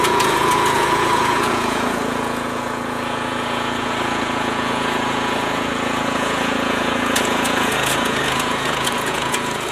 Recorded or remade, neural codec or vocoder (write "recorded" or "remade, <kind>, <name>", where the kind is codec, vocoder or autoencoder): remade, vocoder, Vocos